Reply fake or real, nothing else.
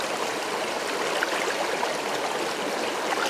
real